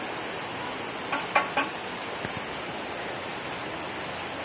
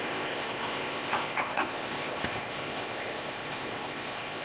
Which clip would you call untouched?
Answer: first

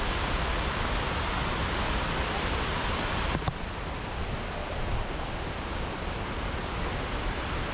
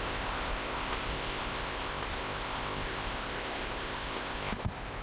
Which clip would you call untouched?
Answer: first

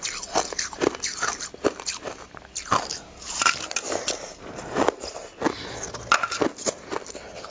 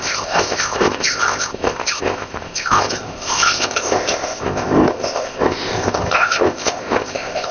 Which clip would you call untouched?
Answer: first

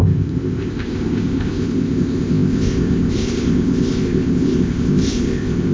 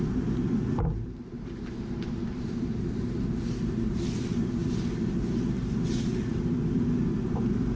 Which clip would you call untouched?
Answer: second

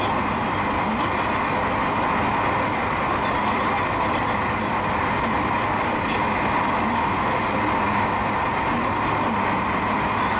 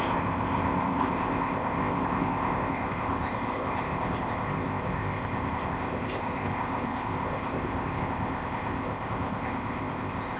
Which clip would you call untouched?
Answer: first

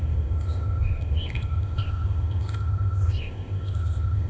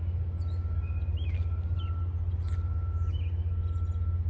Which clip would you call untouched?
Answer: second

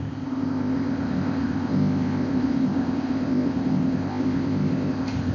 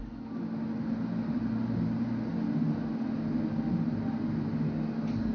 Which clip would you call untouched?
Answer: second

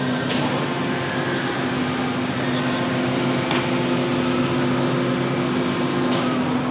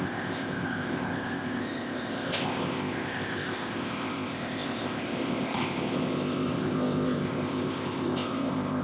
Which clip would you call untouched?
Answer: first